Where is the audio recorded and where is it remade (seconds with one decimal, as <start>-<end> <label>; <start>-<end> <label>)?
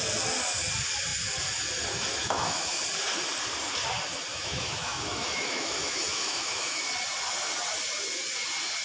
0.0-2.2 recorded; 2.2-2.8 remade; 2.8-4.3 recorded; 4.3-6.8 remade; 6.8-8.8 recorded